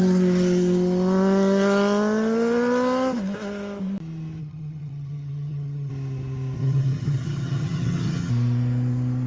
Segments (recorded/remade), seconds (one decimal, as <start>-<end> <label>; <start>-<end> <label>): 0.0-4.4 recorded; 4.4-5.9 remade; 5.9-6.6 recorded; 6.6-8.3 remade; 8.3-9.3 recorded